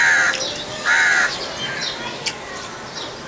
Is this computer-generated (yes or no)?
no